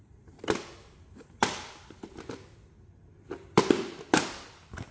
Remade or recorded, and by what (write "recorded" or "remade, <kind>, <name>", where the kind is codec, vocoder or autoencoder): recorded